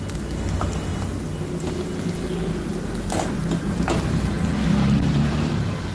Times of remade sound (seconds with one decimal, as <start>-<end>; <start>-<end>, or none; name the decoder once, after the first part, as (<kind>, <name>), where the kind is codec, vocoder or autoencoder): none